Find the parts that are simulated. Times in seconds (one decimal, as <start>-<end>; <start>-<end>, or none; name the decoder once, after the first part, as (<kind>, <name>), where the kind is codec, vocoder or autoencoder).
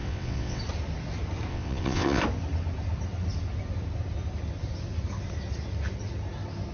0.0-0.6 (vocoder, WaveNeXt); 1.5-2.2